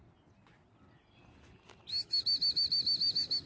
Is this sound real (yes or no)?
yes